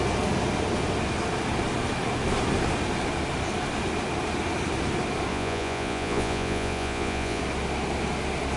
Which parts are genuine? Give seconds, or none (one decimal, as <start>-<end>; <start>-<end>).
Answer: 0.0-5.3; 7.4-8.6